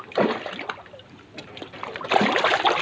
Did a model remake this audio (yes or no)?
no